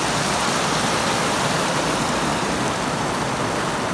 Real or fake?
real